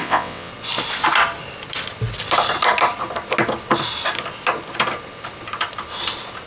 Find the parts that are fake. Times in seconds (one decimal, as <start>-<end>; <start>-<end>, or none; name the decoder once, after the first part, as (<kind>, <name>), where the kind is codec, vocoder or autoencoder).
0.0-0.5 (vocoder, WaveNeXt)